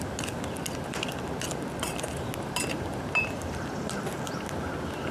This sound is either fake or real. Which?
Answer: fake